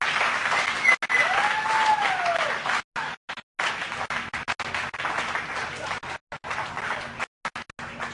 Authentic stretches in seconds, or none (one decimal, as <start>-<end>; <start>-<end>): 0.0-8.1